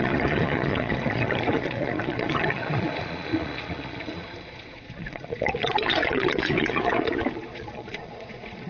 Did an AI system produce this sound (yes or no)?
yes